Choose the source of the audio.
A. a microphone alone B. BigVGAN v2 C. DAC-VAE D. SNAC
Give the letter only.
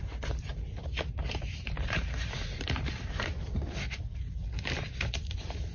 B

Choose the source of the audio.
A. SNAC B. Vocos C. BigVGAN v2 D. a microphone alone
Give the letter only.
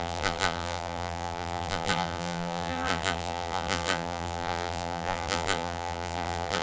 C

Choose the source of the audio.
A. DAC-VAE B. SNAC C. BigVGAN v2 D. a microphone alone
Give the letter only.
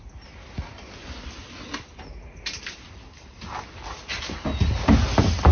D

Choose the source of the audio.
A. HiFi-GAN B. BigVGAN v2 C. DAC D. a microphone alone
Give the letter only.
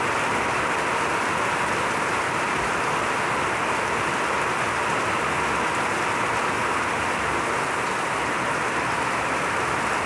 D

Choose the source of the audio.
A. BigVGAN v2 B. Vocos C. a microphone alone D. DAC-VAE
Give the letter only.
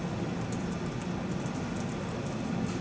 C